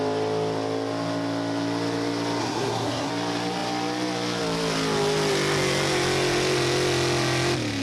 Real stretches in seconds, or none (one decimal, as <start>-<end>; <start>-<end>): 0.0-2.4; 3.1-7.8